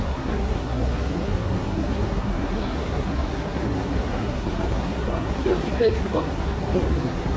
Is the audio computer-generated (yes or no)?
yes